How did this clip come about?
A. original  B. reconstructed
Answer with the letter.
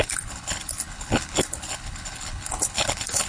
B